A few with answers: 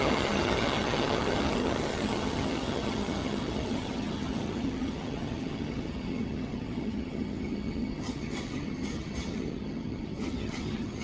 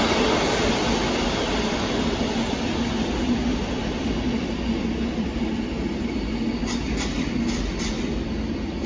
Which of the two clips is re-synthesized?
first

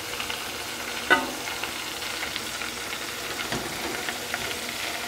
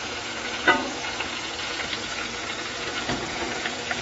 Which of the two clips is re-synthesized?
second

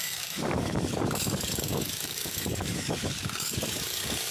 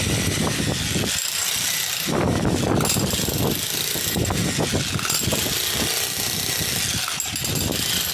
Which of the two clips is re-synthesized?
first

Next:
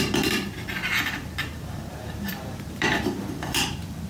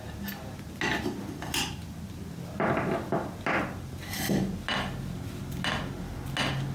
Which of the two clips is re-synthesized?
first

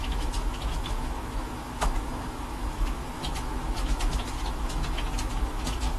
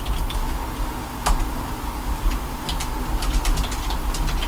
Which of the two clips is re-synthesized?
first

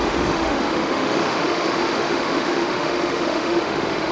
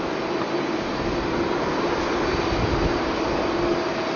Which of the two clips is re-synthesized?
first